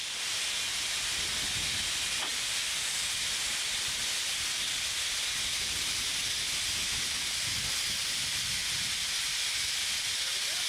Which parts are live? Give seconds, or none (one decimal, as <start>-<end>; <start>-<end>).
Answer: 0.0-10.7